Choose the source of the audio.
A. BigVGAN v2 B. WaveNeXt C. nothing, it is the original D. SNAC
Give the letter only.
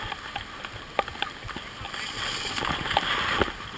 C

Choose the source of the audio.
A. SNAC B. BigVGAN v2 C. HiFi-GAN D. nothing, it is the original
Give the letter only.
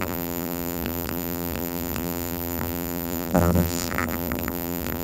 B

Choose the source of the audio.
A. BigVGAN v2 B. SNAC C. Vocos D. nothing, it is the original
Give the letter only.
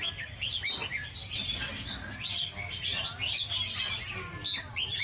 D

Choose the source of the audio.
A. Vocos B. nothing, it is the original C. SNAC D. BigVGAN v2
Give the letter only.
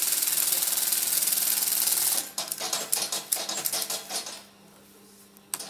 B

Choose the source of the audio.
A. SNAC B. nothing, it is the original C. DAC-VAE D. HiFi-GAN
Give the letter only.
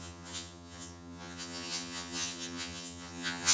D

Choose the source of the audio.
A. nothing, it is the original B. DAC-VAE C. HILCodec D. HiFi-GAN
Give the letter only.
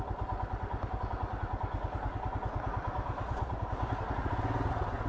A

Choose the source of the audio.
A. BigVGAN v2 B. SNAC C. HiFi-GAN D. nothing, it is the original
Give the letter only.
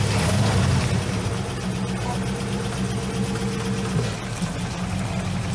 D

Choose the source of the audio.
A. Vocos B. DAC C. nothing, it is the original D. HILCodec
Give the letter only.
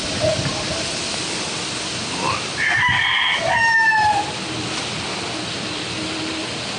C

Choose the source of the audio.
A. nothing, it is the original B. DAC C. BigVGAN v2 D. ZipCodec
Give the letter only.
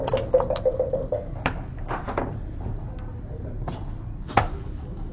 A